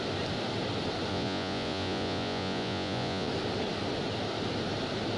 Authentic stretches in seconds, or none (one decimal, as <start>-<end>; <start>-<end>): 0.0-1.1; 3.3-5.2